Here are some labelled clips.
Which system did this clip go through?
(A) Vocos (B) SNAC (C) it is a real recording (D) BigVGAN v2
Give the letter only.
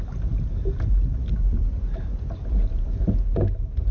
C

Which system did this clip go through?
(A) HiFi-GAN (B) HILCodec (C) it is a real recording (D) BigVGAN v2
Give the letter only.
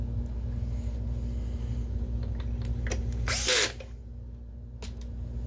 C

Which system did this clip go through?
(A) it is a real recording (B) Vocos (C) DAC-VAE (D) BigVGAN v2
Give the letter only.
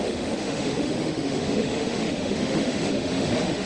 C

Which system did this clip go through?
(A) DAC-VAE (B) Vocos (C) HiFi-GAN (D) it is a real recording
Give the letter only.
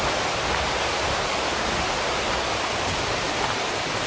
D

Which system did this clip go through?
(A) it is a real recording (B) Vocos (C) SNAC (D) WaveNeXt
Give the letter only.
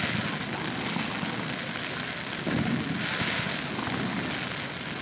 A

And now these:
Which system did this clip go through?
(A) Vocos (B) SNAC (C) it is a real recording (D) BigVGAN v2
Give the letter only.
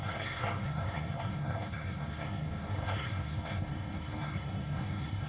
B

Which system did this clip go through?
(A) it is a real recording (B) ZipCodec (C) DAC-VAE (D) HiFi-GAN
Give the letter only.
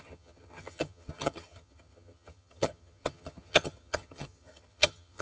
D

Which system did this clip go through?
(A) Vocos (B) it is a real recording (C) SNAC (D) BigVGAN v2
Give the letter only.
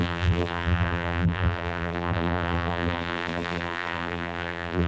D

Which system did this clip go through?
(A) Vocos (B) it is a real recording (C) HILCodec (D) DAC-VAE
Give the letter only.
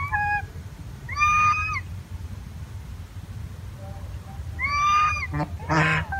B